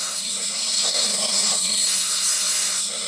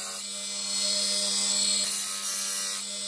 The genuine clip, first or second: second